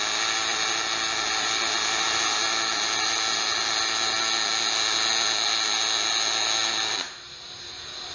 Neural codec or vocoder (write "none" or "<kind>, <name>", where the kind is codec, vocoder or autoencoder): none